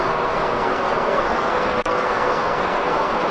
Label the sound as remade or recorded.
remade